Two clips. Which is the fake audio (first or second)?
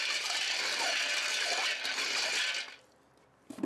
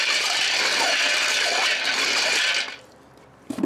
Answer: second